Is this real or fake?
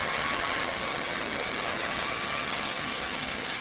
fake